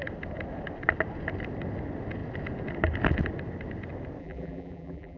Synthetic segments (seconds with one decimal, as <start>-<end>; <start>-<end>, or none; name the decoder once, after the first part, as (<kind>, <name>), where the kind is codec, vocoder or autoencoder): 4.2-5.2 (vocoder, BigVGAN v2)